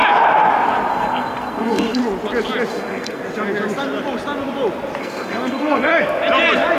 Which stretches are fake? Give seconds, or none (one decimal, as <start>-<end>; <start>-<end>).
0.9-2.0; 2.7-3.2; 5.0-5.9